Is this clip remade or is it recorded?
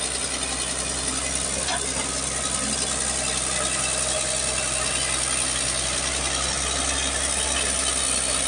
recorded